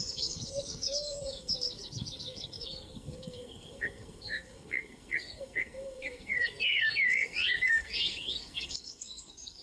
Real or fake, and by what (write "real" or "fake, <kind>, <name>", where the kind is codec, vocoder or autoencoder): fake, codec, SNAC